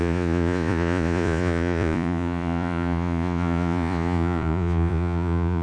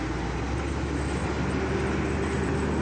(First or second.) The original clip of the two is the second